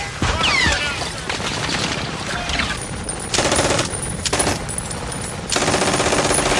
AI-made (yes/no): no